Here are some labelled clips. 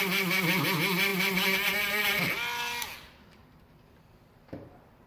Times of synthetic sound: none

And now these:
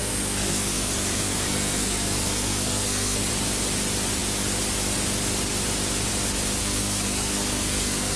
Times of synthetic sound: 0.0-3.3 (codec, SNAC); 6.6-8.2

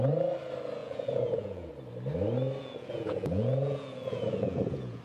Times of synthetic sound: 0.8-1.7 (vocoder, Vocos); 2.6-5.0